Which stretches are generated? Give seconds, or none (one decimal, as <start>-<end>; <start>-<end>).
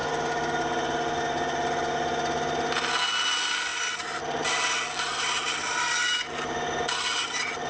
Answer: none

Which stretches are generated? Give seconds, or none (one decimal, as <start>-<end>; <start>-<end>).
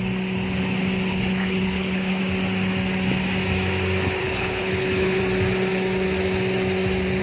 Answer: 1.1-2.2; 4.2-5.2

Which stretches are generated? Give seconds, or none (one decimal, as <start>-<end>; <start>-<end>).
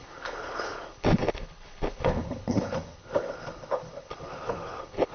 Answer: 0.0-5.1